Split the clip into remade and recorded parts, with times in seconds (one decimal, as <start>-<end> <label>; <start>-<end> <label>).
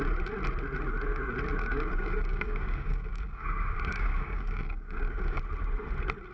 0.0-1.6 recorded; 1.6-5.4 remade; 5.4-6.3 recorded